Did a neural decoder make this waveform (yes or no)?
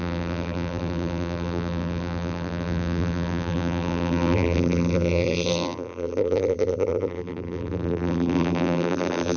yes